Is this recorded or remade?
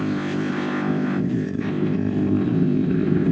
remade